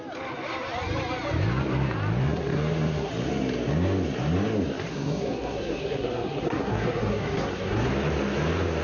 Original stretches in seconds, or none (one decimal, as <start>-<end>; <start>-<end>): 0.0-2.2; 3.1-4.9; 7.9-8.8